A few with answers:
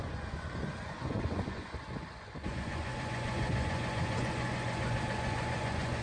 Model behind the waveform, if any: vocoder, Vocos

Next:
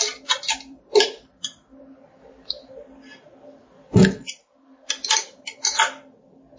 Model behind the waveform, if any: none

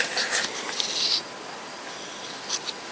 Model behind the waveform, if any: none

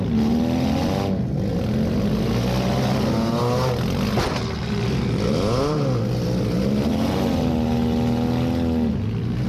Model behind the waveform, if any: none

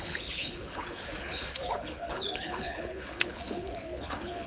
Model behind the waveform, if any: codec, HILCodec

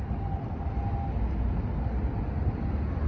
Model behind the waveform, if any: none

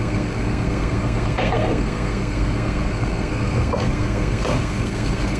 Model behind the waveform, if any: codec, SNAC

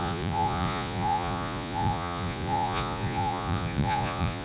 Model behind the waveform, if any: vocoder, Vocos